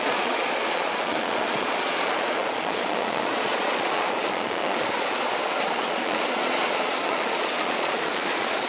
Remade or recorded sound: remade